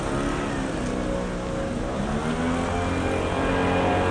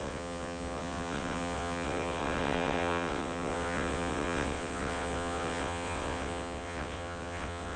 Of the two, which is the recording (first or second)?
first